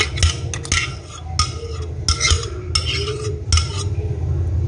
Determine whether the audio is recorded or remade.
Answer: recorded